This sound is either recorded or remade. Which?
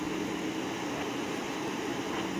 recorded